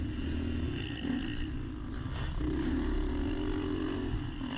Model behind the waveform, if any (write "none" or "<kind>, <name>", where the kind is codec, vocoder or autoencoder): none